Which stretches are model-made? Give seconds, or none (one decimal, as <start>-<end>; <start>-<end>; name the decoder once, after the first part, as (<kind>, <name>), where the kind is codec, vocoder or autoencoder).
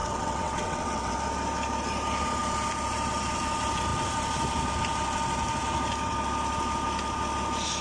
0.0-1.2 (vocoder, WaveNeXt)